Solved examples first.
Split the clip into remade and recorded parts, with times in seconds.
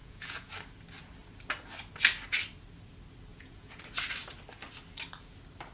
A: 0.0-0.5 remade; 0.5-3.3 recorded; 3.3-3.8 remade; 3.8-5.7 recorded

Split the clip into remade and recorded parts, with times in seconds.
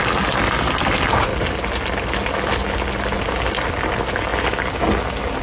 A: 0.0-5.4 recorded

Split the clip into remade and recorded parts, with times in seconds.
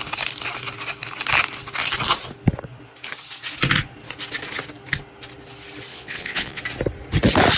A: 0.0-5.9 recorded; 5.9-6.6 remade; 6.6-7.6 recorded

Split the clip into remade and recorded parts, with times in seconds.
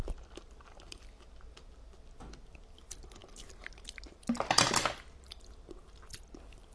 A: 0.0-6.7 recorded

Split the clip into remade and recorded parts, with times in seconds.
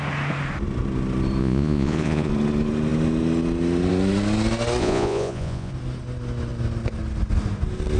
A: 0.0-1.4 recorded; 1.4-2.3 remade; 2.3-4.8 recorded; 4.8-5.7 remade; 5.7-8.0 recorded